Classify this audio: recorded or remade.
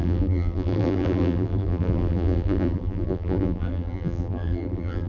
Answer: remade